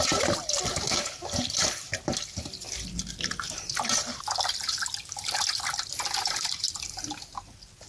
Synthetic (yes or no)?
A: no